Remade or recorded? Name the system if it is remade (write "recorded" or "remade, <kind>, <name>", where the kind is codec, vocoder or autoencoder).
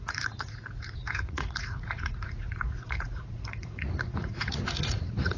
remade, vocoder, Vocos